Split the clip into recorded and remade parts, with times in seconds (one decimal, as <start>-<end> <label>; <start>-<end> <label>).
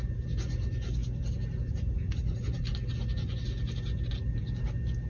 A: 0.0-5.1 recorded